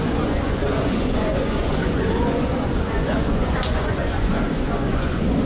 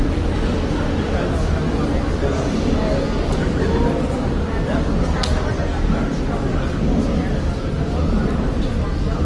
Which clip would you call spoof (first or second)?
first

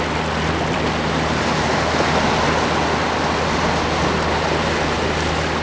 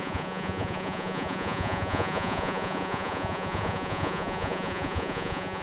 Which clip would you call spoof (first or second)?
second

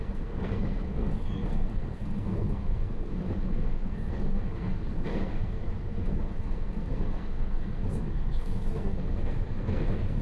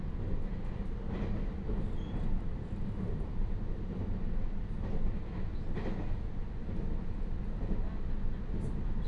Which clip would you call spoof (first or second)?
first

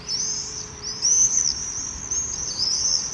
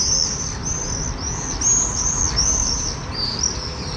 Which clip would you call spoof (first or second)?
first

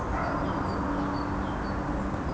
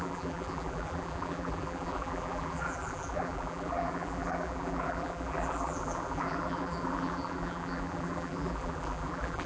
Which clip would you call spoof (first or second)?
second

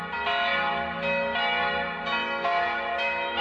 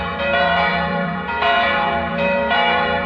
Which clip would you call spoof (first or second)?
second